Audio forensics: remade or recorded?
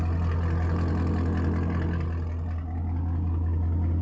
recorded